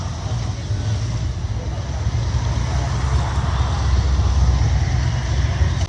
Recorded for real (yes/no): yes